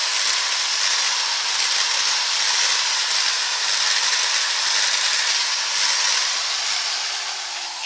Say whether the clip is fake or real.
real